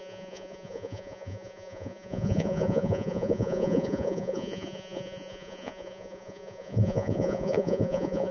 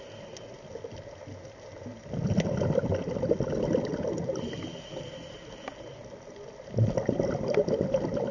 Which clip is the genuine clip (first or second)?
second